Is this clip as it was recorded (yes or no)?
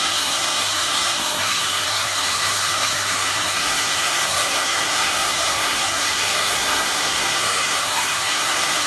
no